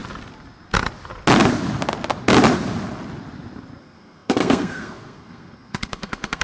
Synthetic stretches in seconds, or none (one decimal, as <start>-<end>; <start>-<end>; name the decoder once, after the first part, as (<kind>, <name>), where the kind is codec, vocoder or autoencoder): 3.8-6.4 (codec, SNAC)